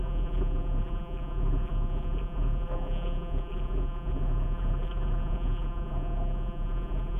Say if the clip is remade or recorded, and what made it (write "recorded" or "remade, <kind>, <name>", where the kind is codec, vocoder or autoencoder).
remade, vocoder, BigVGAN v2